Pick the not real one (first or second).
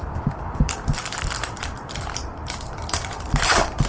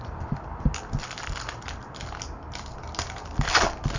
first